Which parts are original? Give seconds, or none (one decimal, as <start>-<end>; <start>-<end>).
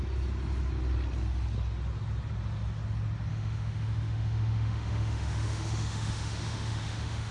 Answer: 0.0-3.3